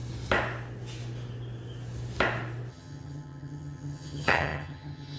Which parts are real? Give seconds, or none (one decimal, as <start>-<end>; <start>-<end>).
0.0-2.7